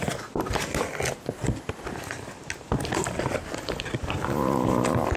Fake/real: real